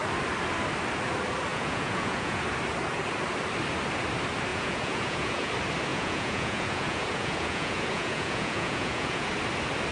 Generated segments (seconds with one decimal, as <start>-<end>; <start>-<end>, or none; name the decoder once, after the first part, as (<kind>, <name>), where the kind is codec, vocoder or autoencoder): 1.5-2.4 (vocoder, Vocos); 4.5-5.5; 5.9-9.3